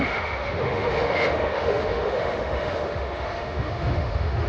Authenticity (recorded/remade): remade